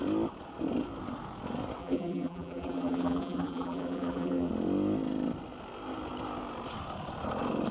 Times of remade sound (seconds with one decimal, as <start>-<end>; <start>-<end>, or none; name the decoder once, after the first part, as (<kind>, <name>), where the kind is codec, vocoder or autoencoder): 1.8-4.5 (vocoder, BigVGAN v2)